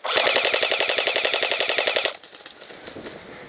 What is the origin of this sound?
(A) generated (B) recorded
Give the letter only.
B